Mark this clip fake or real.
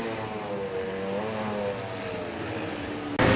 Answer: real